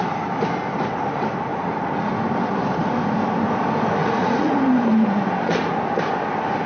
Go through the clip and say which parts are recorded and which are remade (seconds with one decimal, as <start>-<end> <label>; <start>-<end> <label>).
0.0-1.5 recorded; 1.5-2.1 remade; 2.1-4.0 recorded; 4.0-4.5 remade; 4.5-6.7 recorded